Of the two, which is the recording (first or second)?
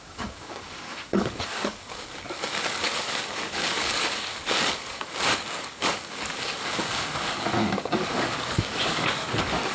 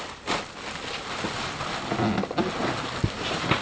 second